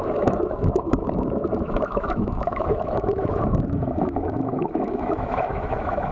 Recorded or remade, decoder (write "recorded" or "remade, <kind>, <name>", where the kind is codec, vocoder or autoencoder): remade, autoencoder, DAC-VAE